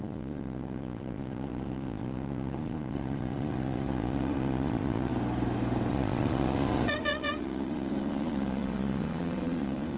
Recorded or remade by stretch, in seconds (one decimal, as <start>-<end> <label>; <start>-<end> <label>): 0.0-5.1 remade; 5.1-5.9 recorded; 5.9-10.0 remade